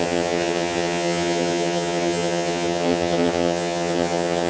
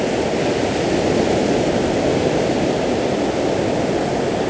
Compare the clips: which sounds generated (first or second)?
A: first